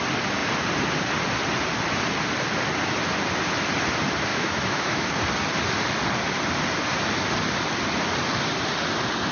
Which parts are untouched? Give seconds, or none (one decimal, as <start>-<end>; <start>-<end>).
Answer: 0.0-4.3; 5.2-9.3